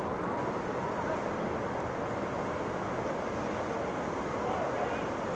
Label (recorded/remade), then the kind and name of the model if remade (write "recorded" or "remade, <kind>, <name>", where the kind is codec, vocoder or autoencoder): recorded